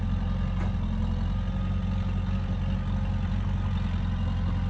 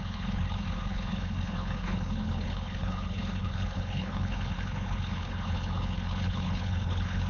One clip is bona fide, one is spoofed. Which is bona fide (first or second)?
first